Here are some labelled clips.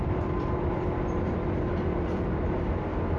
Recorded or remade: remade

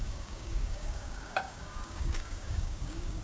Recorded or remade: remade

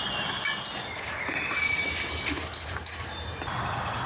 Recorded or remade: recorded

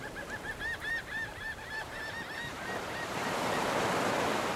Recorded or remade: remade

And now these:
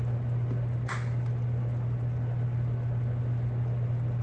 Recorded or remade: recorded